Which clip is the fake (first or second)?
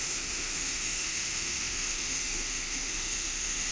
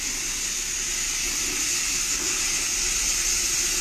first